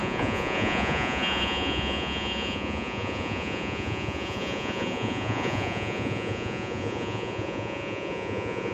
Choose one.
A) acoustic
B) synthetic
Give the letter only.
B